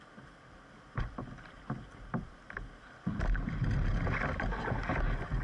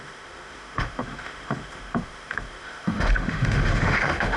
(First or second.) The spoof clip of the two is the second